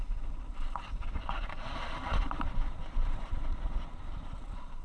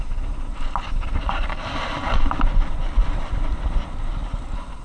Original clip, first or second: second